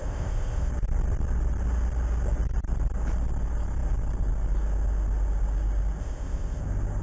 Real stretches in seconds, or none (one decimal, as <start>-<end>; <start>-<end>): 0.7-6.0; 6.6-7.0